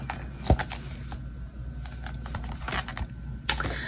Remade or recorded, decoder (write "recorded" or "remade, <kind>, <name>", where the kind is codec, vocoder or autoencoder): recorded